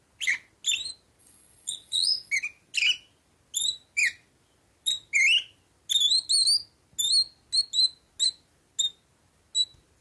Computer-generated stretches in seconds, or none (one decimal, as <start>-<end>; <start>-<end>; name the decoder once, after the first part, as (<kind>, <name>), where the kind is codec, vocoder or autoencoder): 1.2-2.3 (vocoder, Vocos)